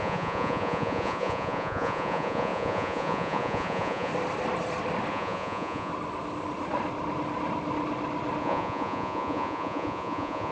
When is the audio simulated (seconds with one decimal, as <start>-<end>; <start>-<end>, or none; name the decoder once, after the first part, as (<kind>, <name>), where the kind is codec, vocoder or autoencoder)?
0.0-4.1 (vocoder, Vocos); 5.1-5.9; 8.4-10.5